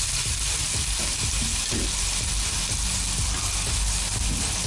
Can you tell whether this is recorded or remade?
recorded